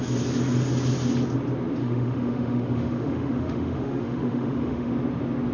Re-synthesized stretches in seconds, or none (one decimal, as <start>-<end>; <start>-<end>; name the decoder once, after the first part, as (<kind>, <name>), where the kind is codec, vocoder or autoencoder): 1.8-4.9 (autoencoder, DAC-VAE)